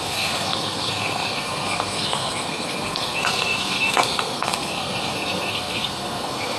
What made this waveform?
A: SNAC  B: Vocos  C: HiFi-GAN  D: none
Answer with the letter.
A